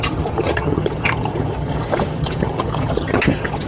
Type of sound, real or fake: fake